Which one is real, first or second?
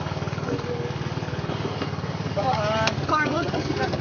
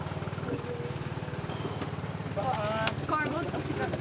second